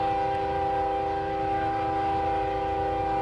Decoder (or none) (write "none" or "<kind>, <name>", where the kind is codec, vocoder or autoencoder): none